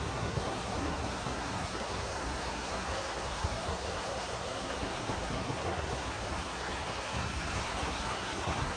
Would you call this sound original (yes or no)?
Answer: no